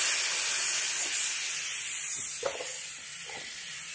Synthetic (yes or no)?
no